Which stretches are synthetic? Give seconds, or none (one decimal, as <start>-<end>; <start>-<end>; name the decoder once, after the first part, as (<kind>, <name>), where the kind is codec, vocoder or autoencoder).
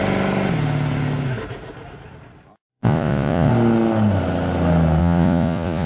2.7-3.5 (vocoder, Vocos); 5.0-5.9